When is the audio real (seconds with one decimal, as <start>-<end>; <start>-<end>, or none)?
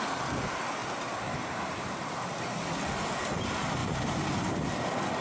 0.0-0.8; 2.4-5.2